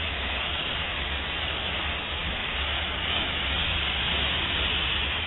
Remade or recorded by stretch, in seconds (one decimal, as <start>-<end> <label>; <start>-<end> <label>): 0.0-5.3 recorded